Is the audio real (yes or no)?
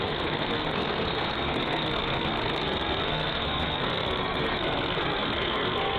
no